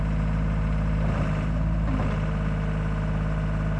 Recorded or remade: recorded